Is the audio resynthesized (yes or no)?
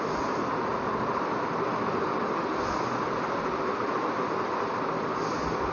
no